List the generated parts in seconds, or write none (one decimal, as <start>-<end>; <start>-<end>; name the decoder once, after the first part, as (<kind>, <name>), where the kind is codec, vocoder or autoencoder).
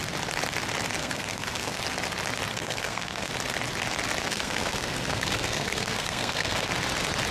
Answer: 1.0-1.8 (codec, SNAC); 2.5-3.3; 4.2-6.7